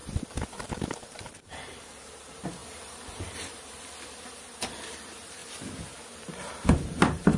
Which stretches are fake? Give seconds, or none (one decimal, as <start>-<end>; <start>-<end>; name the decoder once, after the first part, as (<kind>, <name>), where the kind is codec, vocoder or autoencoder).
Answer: 0.0-5.4 (vocoder, BigVGAN v2); 6.2-7.4